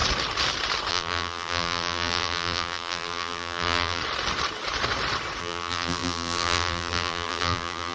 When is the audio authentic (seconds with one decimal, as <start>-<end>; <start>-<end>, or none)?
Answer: 0.0-0.9; 4.0-5.4